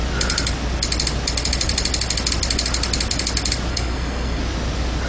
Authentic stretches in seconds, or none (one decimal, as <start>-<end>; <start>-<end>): 0.0-3.7; 4.4-5.1